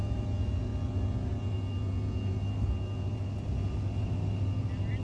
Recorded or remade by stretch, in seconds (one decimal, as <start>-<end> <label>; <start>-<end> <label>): 0.0-5.0 recorded